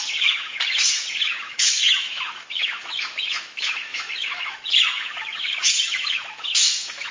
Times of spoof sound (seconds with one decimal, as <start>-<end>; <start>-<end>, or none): 0.0-7.1